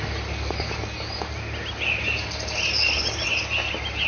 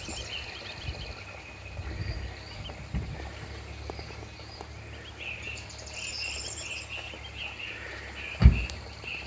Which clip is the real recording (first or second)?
first